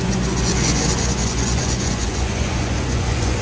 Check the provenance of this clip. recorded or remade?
remade